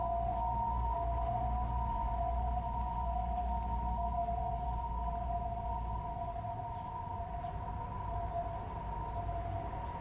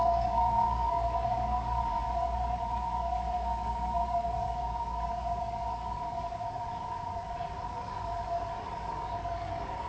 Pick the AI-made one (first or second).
second